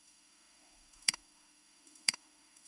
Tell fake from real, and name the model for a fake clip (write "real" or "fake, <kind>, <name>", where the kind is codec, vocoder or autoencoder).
fake, autoencoder, DAC-VAE